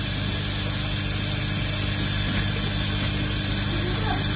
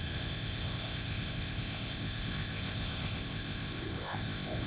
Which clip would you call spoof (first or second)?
second